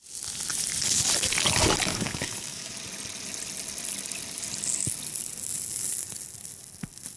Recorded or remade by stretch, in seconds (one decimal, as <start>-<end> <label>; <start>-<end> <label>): 0.0-1.9 recorded; 1.9-2.7 remade; 2.7-7.2 recorded